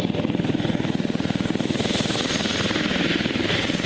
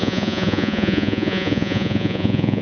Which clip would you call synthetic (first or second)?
second